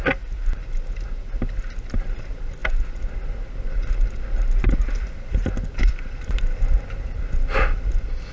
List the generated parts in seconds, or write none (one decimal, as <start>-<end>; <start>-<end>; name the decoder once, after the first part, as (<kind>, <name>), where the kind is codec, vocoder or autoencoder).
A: none

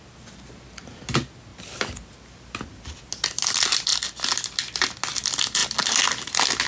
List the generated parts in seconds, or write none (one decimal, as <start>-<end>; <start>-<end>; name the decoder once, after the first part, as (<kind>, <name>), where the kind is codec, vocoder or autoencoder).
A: none

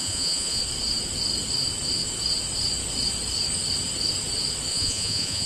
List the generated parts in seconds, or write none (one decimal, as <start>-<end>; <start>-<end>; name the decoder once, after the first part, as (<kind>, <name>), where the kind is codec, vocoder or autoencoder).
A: 0.0-0.6 (vocoder, Vocos); 4.7-5.5

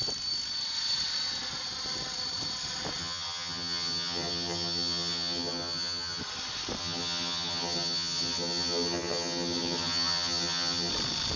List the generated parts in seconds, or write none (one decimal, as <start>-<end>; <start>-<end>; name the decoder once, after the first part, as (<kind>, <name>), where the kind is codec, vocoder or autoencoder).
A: 3.0-6.2 (vocoder, HiFi-GAN); 6.8-10.9

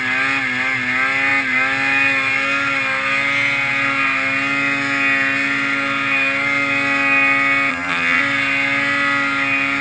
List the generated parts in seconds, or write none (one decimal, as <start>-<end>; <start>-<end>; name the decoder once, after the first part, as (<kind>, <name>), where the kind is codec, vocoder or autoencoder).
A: 7.7-8.2 (vocoder, HiFi-GAN)

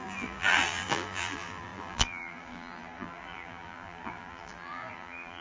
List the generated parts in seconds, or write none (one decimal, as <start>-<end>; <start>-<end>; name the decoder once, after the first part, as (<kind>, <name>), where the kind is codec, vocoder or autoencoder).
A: 0.0-5.4 (vocoder, BigVGAN v2)